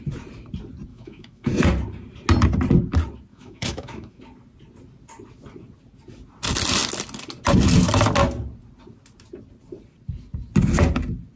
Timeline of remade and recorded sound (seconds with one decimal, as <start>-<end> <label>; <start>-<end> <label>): 0.0-0.9 recorded; 0.9-1.5 remade; 1.5-3.3 recorded; 3.3-4.2 remade; 4.2-11.4 recorded